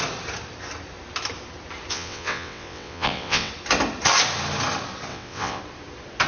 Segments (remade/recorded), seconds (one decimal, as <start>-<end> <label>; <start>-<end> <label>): 0.0-1.9 recorded; 1.9-3.5 remade; 3.5-5.1 recorded; 5.1-5.6 remade; 5.6-6.3 recorded